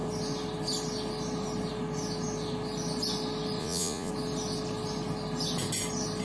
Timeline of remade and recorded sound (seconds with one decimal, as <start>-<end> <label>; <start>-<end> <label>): 0.0-3.6 recorded; 3.6-4.1 remade; 4.1-6.2 recorded